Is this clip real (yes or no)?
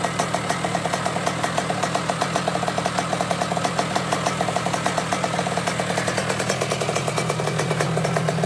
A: yes